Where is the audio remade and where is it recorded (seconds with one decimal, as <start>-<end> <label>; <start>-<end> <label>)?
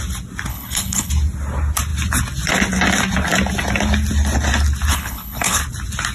0.0-0.5 recorded; 0.5-1.1 remade; 1.1-4.9 recorded; 4.9-5.6 remade; 5.6-6.1 recorded